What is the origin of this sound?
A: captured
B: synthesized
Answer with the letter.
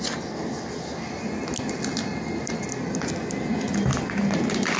A